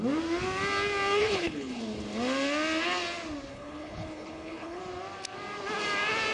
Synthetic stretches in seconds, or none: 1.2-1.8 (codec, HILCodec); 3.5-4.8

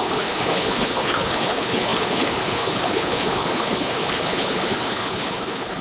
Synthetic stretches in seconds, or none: 0.0-5.8 (codec, HILCodec)

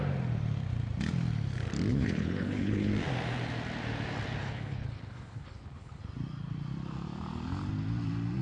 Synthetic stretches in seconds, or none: 1.9-2.9 (codec, HILCodec); 4.4-6.0

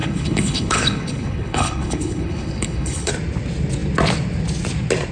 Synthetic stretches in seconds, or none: 0.0-3.1 (codec, HILCodec)

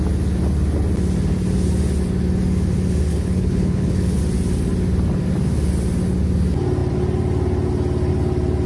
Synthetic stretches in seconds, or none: 3.1-4.2 (codec, HILCodec)